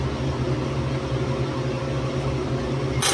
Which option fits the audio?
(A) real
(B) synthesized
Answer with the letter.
A